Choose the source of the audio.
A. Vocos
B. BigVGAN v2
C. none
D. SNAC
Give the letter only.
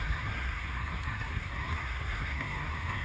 D